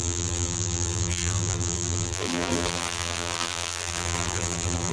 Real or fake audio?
fake